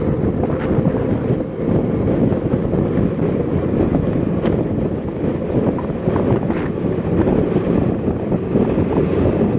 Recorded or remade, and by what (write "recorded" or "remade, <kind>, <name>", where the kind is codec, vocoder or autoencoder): recorded